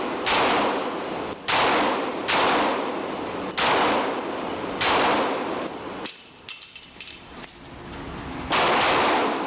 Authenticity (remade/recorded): recorded